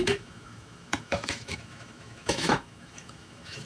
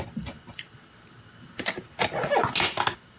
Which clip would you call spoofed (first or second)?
first